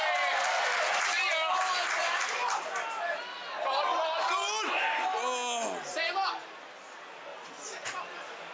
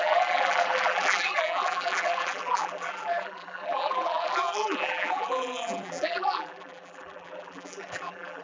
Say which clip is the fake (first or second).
second